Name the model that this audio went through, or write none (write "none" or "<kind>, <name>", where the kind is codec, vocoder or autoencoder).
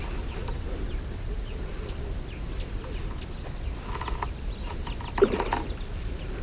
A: none